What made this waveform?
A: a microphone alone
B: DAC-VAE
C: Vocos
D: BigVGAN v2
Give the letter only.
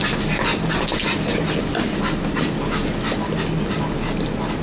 A